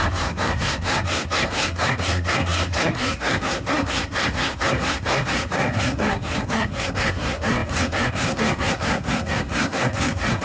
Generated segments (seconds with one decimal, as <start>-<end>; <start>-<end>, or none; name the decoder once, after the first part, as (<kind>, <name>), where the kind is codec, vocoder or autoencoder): 0.0-10.4 (codec, SNAC)